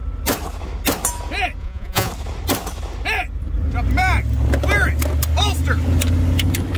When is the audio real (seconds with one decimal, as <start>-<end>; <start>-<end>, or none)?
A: 0.0-1.6; 2.1-6.8